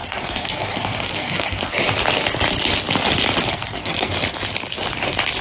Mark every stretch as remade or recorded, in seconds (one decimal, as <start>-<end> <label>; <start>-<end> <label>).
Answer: 0.0-1.7 remade; 1.7-3.5 recorded; 3.5-4.1 remade; 4.1-5.4 recorded